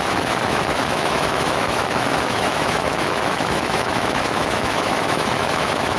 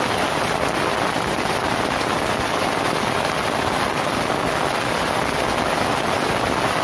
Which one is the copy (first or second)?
first